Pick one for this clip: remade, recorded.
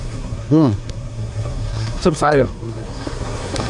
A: remade